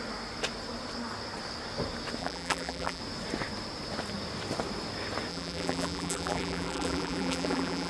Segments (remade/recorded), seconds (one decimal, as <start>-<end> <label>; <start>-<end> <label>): 0.0-2.2 recorded; 2.2-3.0 remade; 3.0-5.3 recorded; 5.3-7.9 remade